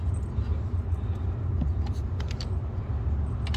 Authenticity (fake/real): real